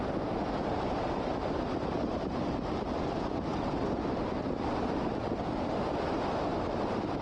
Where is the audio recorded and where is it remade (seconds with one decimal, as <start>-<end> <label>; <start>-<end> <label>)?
0.0-6.5 remade; 6.5-7.2 recorded